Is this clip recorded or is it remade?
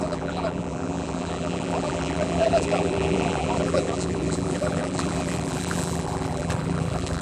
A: remade